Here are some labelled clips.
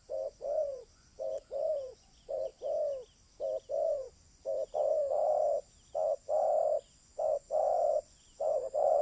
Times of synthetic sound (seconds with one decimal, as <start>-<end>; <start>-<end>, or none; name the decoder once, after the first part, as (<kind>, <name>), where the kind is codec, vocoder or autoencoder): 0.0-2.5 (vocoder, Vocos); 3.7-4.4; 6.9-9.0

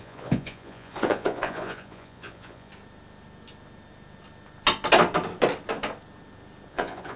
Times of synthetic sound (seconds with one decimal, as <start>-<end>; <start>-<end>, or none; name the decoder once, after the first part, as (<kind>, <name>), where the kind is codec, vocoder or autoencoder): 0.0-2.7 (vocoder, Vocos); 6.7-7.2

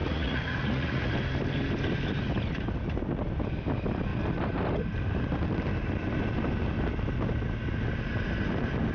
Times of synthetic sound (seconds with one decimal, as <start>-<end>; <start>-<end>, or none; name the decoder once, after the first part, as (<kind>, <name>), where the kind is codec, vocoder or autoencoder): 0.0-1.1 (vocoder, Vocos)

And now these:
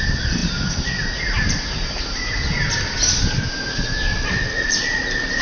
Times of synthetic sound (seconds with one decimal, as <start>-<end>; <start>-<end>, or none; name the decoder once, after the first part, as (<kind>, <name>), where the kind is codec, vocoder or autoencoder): none

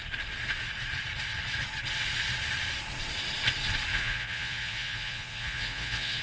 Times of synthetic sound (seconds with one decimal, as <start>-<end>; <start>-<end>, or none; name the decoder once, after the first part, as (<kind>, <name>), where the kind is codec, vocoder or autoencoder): 3.9-6.2 (vocoder, Vocos)